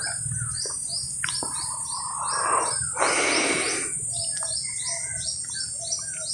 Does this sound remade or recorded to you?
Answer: recorded